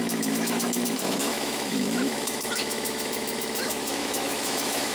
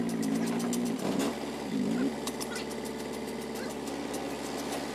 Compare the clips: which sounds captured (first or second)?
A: second